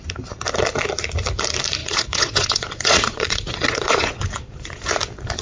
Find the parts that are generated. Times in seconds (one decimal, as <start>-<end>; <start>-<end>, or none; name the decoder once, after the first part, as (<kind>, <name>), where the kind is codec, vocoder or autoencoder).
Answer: 1.8-5.0 (vocoder, Vocos)